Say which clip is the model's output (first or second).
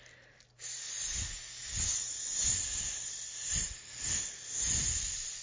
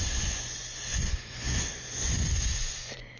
second